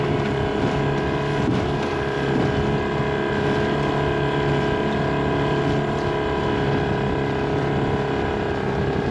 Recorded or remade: recorded